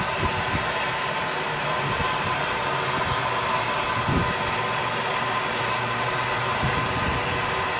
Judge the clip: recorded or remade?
recorded